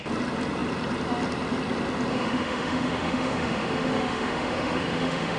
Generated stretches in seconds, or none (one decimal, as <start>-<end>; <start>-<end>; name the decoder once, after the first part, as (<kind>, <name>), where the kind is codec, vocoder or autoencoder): 2.1-5.4 (autoencoder, DAC-VAE)